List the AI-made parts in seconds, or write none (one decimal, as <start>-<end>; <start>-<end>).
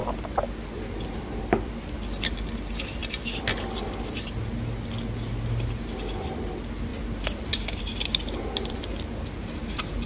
1.4-3.0; 6.4-10.1